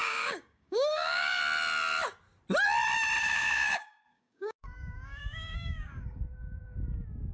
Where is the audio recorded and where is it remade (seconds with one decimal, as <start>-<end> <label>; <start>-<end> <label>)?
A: 0.0-1.4 remade; 1.4-3.2 recorded; 3.2-6.2 remade; 6.2-7.3 recorded